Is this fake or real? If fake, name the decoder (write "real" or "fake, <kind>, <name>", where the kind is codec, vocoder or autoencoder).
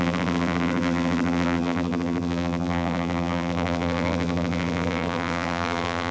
fake, vocoder, BigVGAN v2